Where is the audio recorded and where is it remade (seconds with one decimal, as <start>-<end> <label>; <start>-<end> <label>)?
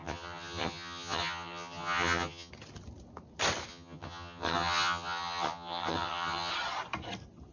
0.0-2.5 remade; 2.5-3.7 recorded; 3.7-6.5 remade; 6.5-7.5 recorded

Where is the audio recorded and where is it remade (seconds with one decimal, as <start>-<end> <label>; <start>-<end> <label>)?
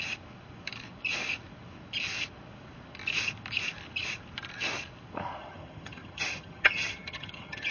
0.0-5.4 recorded; 5.4-7.7 remade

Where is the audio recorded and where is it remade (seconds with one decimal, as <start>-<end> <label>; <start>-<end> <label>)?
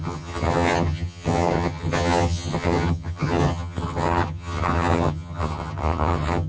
0.0-6.5 remade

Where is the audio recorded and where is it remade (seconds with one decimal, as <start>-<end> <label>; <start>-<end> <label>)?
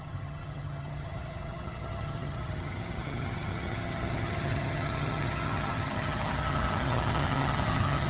0.0-8.1 remade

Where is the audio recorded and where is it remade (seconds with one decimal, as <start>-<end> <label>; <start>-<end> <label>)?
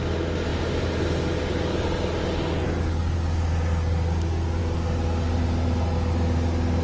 0.0-6.8 recorded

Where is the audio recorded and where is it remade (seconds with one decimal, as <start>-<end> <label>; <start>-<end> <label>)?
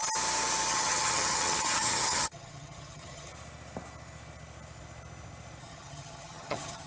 0.0-0.7 recorded; 0.7-3.3 remade; 3.3-5.6 recorded; 5.6-6.9 remade